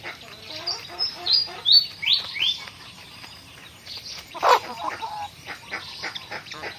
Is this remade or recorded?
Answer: remade